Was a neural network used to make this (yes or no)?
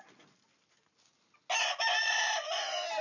no